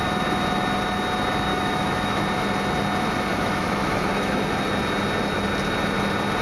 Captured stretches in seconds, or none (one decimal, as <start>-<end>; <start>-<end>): 0.0-1.5; 2.2-3.3; 4.4-6.4